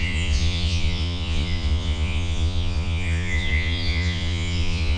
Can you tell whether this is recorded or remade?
remade